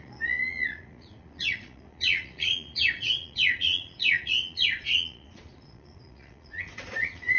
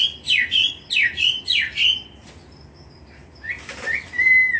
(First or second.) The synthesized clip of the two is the first